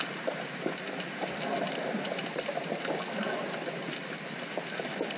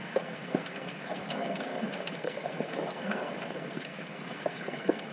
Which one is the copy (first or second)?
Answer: second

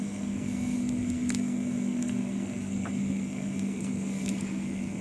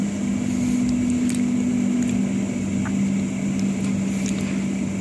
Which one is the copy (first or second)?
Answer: first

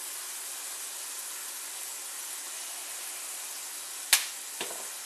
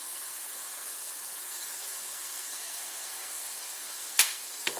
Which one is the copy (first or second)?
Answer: second